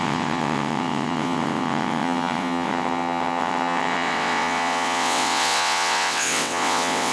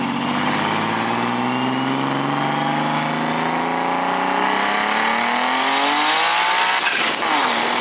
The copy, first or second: first